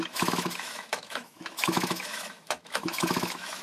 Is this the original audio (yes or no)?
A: no